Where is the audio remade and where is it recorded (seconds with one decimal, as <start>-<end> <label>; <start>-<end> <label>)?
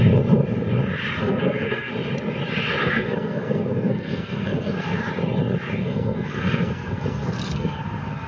0.0-1.2 recorded; 1.2-1.9 remade; 1.9-2.8 recorded; 2.8-5.0 remade; 5.0-5.8 recorded; 5.8-8.3 remade